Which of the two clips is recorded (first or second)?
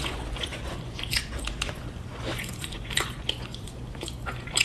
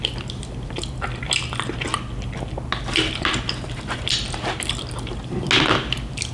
second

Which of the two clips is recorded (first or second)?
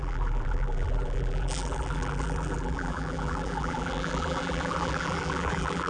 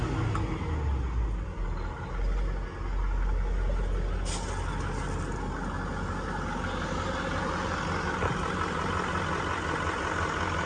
second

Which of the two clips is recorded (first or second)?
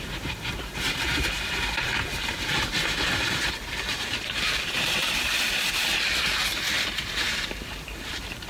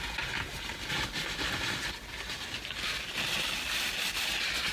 second